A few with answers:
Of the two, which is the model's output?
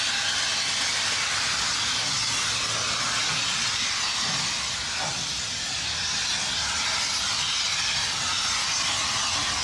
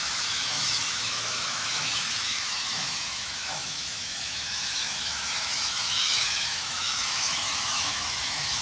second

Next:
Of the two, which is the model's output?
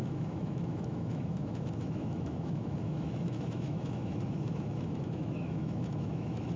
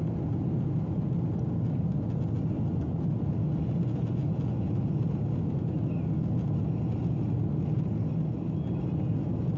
first